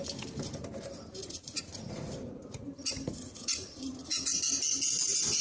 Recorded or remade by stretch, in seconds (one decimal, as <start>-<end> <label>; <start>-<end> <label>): 0.0-1.2 recorded; 1.2-4.4 remade; 4.4-5.4 recorded